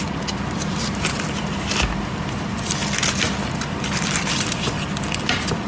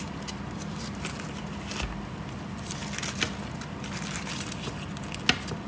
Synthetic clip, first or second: first